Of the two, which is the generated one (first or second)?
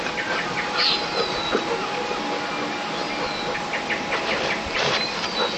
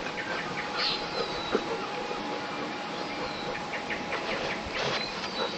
second